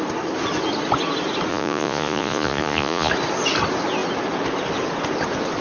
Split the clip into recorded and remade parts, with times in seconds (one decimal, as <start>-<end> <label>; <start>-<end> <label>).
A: 0.0-1.5 recorded; 1.5-3.1 remade; 3.1-5.6 recorded